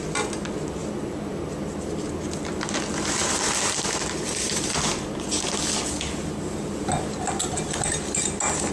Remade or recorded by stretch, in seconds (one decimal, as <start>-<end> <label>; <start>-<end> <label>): 0.0-8.7 recorded